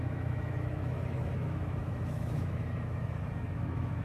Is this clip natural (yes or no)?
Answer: no